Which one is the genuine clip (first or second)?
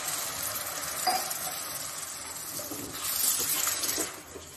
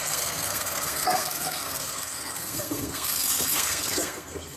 first